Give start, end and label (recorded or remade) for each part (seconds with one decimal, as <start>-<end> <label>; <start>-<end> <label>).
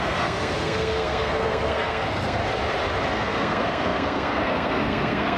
0.0-2.4 remade; 2.4-3.1 recorded; 3.1-5.4 remade